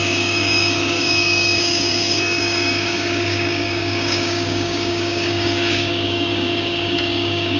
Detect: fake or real fake